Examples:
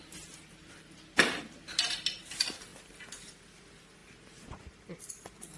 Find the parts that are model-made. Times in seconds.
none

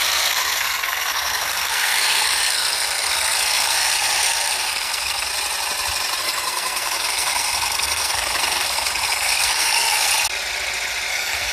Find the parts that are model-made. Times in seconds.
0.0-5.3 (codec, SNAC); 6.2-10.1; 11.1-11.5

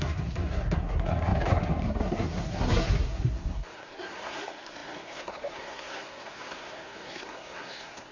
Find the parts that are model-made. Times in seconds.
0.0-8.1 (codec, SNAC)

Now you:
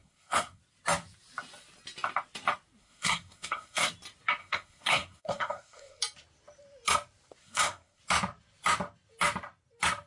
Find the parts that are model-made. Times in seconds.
0.0-0.6 (codec, SNAC); 2.8-3.9; 4.4-6.0; 7.4-8.0